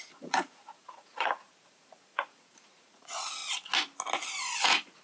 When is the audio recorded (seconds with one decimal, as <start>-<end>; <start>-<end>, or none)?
3.4-4.4